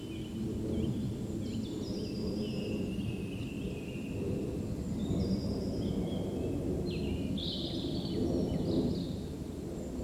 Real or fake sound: real